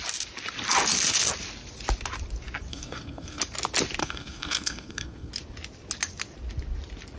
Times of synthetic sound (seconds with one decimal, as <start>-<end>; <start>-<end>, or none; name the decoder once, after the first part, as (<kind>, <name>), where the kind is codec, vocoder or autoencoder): 2.7-3.4 (codec, SNAC); 4.0-5.3